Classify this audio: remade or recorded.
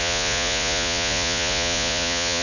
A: remade